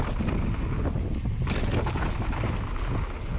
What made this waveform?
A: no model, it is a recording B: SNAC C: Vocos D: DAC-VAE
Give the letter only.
A